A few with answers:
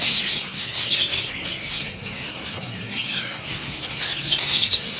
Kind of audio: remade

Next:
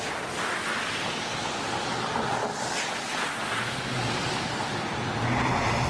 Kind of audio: recorded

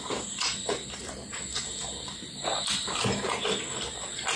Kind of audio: recorded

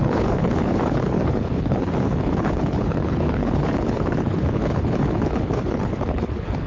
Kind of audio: remade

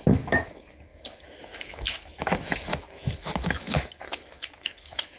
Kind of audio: remade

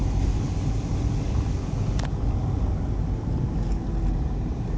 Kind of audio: recorded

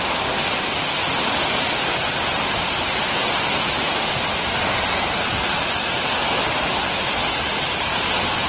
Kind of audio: recorded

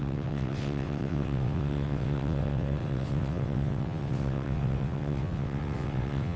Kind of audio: remade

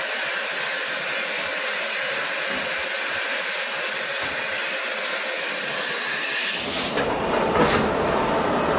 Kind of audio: recorded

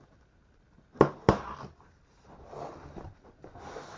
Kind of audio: recorded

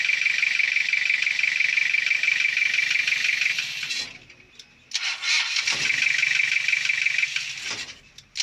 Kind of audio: recorded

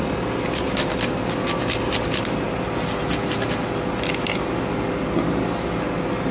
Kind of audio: recorded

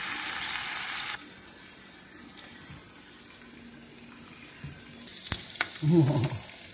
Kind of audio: recorded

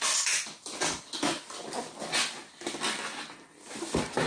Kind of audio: recorded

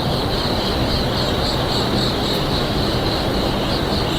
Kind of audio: recorded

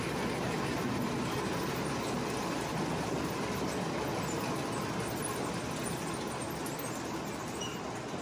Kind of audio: recorded